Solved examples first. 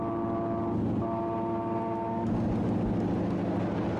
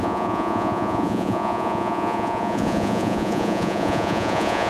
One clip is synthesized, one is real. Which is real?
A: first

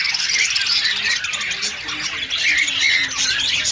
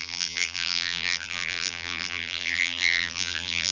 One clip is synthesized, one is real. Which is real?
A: first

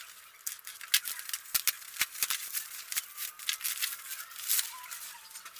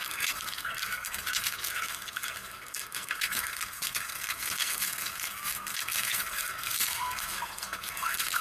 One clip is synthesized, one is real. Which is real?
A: first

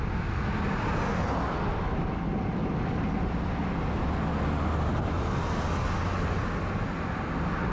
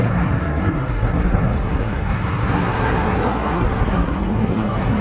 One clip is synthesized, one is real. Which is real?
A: first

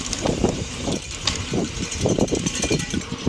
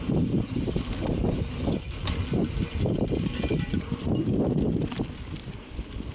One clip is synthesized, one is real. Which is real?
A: second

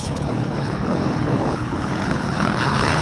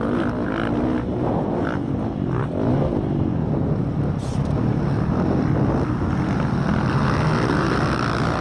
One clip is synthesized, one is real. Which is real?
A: second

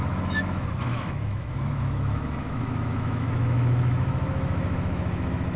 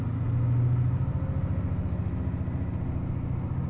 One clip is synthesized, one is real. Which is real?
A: second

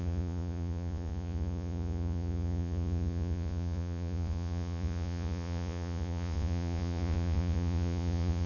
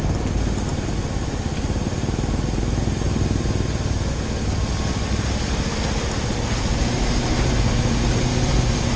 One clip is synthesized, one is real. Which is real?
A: second